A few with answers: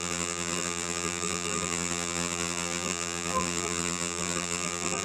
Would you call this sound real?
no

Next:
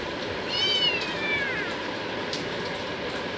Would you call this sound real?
no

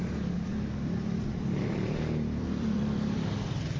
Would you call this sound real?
no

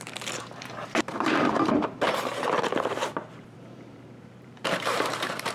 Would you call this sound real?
no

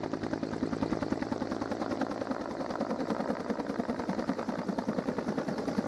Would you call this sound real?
no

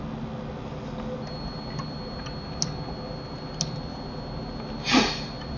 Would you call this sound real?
yes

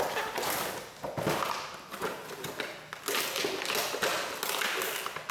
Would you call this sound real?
yes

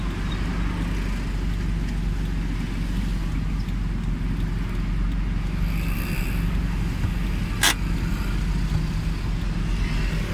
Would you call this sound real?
yes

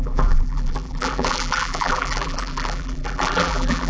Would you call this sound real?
no